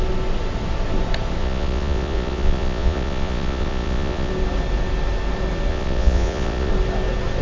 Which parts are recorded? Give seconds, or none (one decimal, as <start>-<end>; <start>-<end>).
0.0-1.4; 4.3-5.7; 6.7-7.4